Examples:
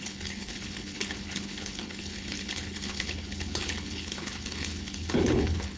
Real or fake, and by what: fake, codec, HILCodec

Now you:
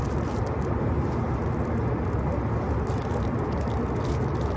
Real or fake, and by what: real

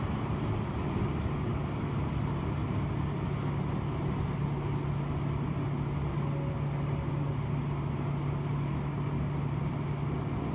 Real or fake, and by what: real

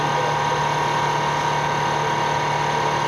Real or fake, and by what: real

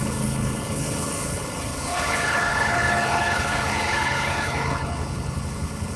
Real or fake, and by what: fake, codec, HILCodec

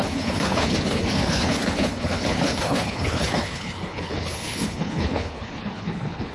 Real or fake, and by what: fake, codec, HILCodec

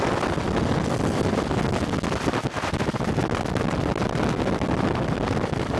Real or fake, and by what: real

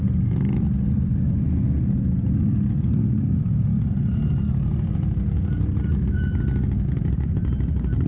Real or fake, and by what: real